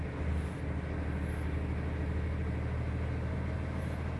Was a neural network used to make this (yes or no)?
no